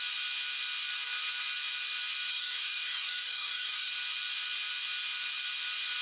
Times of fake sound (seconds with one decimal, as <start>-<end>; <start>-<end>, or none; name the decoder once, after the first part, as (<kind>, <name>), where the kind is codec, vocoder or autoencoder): 2.3-3.9 (codec, DAC)